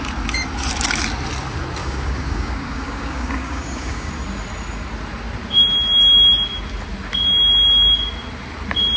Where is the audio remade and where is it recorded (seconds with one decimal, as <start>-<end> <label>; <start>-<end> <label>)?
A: 0.0-1.8 recorded; 1.8-4.1 remade; 4.1-9.0 recorded